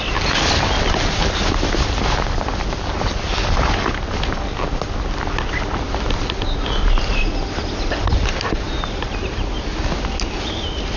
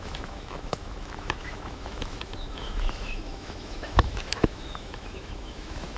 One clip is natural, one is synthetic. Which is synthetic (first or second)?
second